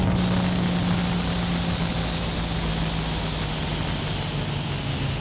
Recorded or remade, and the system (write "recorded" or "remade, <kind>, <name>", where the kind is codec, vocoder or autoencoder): recorded